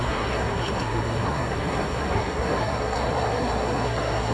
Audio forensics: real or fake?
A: fake